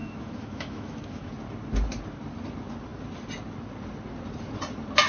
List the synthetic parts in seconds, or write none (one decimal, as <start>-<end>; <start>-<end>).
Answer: 0.0-1.3